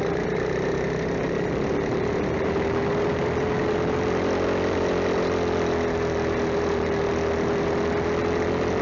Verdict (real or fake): real